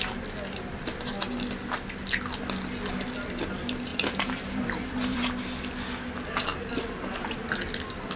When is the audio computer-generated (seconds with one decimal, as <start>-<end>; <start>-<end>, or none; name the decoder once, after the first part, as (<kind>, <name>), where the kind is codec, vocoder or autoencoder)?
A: 3.9-5.4 (vocoder, BigVGAN v2)